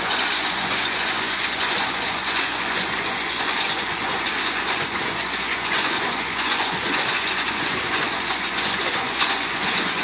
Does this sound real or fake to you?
fake